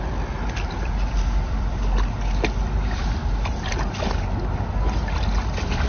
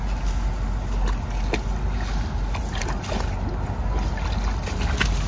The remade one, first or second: first